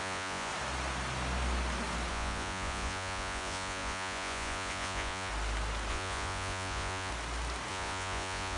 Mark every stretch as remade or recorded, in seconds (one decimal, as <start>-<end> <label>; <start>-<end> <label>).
0.0-0.5 remade; 0.5-2.1 recorded; 2.1-5.3 remade; 5.3-5.9 recorded; 5.9-7.1 remade; 7.1-7.7 recorded; 7.7-8.6 remade